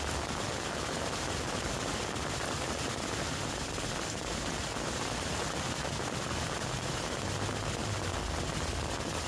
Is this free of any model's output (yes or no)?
yes